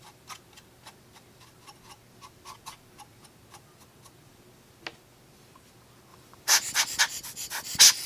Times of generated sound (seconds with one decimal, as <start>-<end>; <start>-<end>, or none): 6.1-7.0